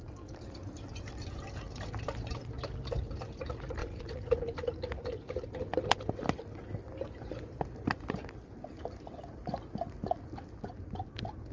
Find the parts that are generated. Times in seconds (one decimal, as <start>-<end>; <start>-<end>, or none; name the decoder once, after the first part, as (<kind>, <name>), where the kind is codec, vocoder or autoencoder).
3.8-4.3 (vocoder, Vocos)